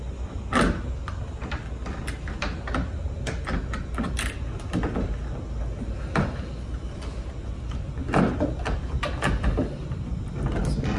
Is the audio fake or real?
real